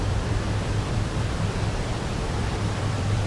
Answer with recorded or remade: remade